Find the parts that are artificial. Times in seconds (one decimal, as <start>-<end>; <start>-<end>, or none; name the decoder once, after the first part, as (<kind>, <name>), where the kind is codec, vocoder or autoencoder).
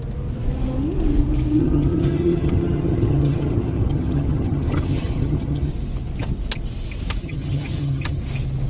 1.6-5.7 (vocoder, HiFi-GAN); 7.2-8.2